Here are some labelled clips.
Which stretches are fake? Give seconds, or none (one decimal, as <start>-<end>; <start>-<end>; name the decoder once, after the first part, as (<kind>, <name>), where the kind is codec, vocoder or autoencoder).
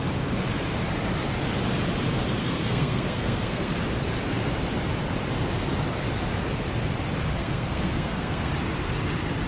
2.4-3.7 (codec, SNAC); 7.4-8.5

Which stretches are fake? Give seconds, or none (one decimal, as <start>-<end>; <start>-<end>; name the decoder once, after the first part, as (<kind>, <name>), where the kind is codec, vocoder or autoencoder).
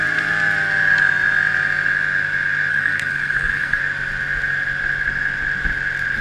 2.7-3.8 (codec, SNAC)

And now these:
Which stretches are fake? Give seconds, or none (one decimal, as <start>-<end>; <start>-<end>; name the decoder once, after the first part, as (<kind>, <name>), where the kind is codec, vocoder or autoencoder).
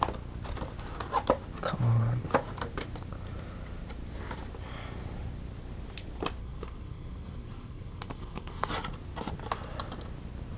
6.4-8.7 (codec, SNAC)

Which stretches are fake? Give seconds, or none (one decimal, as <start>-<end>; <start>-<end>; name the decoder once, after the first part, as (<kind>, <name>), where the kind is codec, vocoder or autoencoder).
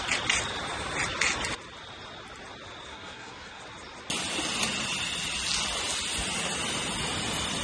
2.9-3.6 (codec, SNAC)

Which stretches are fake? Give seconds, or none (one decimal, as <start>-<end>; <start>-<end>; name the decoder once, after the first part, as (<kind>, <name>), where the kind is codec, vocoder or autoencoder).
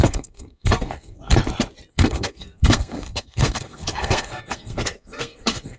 0.0-1.3 (codec, SNAC); 1.9-5.8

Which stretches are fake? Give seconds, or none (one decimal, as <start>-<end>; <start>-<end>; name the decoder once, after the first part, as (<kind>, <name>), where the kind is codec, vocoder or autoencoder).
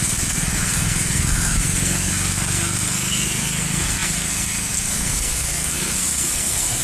0.0-6.8 (codec, SNAC)